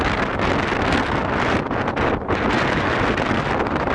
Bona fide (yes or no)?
yes